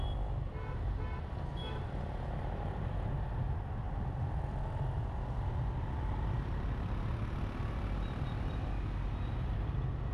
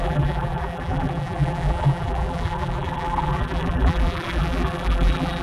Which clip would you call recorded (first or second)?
first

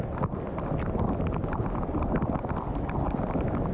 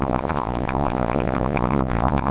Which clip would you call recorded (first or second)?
first